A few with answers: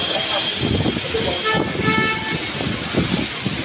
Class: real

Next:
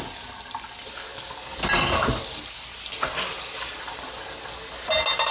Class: real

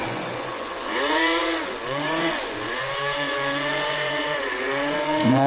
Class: fake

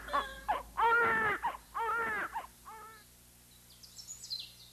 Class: real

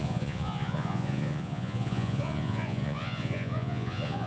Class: fake